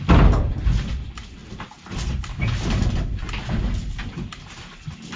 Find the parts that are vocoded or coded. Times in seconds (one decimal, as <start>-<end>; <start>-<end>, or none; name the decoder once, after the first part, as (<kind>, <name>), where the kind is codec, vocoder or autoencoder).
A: none